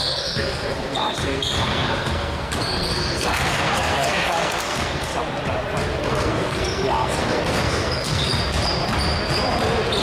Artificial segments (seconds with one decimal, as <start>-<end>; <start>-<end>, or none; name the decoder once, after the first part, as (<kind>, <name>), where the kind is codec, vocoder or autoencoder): 0.0-5.1 (codec, SNAC); 6.0-8.3